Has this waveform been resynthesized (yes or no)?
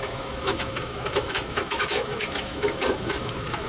yes